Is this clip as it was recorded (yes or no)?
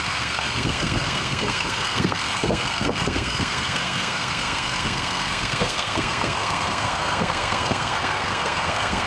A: no